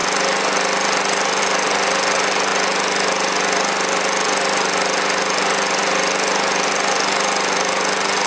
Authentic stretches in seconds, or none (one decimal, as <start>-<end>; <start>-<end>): 0.0-8.3